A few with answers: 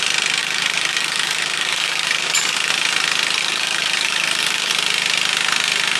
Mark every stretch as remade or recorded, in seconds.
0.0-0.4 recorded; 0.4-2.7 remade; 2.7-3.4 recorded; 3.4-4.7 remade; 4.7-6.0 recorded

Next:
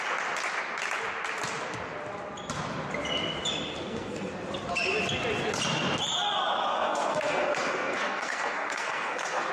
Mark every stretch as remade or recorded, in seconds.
0.0-3.8 recorded; 3.8-4.3 remade; 4.3-6.7 recorded; 6.7-9.5 remade